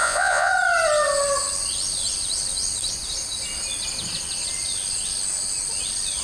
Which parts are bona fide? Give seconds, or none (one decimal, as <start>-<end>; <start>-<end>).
0.5-6.2